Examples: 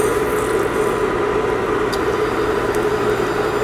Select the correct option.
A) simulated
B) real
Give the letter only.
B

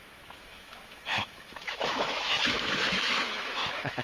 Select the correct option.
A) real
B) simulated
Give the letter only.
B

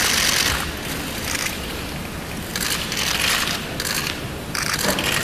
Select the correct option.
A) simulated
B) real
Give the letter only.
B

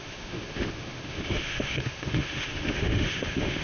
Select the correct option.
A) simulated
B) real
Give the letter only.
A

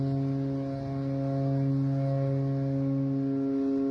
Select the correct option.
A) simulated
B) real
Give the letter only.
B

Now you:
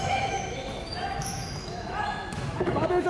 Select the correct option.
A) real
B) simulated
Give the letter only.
B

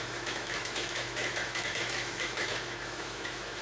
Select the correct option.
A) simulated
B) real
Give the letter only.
A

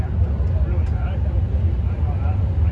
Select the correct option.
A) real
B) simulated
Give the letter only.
A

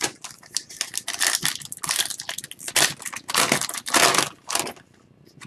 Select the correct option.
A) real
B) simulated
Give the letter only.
A